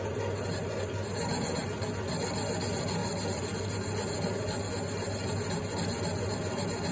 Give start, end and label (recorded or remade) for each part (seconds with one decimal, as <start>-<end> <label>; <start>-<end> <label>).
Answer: 0.0-6.9 recorded